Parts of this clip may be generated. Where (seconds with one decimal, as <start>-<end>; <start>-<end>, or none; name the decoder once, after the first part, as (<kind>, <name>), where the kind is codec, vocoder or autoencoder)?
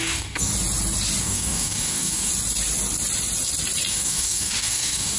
0.0-0.5 (codec, DAC); 1.2-2.3; 3.9-5.2